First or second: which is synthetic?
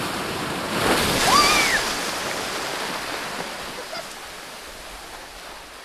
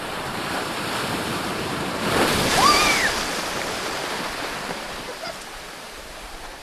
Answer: second